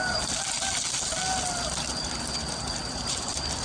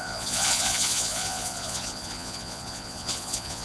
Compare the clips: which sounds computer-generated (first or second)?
second